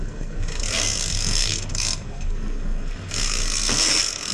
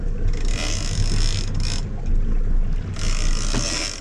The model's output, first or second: first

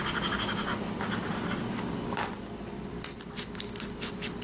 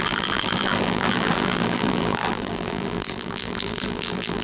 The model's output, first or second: second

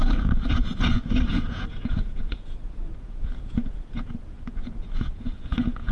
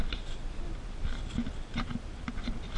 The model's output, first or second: first